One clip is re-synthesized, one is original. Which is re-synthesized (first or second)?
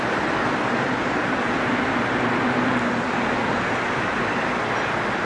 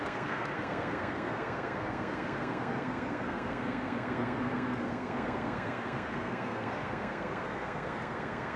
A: second